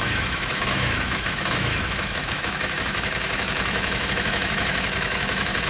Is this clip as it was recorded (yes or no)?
no